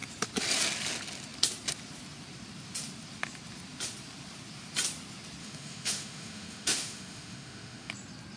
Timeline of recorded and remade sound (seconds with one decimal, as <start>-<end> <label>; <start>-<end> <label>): 0.0-5.4 recorded; 5.4-7.9 remade; 7.9-8.4 recorded